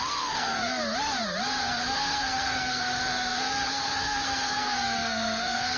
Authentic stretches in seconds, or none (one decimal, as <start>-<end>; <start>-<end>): 0.8-1.6